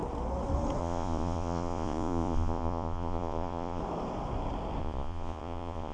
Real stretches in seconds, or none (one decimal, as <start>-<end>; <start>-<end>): 0.0-0.8; 3.8-4.8